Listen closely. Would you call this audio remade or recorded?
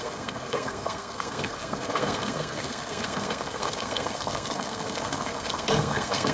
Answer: remade